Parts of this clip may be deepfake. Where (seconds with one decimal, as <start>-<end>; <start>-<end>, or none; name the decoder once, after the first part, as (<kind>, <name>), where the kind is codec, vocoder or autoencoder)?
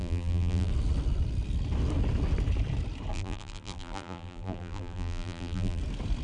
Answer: 0.0-0.7 (vocoder, BigVGAN v2); 3.1-5.8